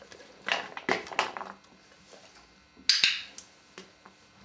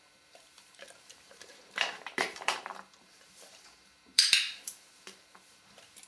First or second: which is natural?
first